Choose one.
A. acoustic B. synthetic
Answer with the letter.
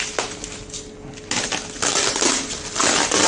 A